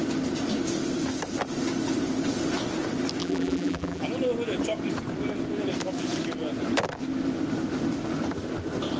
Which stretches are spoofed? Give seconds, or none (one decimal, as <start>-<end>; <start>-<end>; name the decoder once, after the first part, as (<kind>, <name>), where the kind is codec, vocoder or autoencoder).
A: 3.2-4.0 (vocoder, BigVGAN v2)